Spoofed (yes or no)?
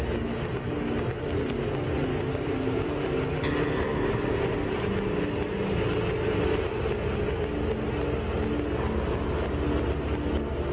no